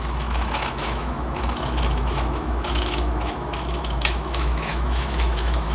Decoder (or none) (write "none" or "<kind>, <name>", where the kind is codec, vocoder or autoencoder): autoencoder, DAC-VAE